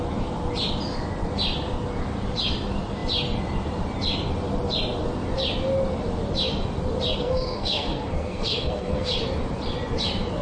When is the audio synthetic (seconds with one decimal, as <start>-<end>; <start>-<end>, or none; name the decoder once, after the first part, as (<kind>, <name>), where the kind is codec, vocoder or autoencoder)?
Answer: 7.2-9.1 (codec, SNAC)